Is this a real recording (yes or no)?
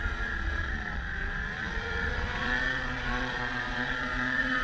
no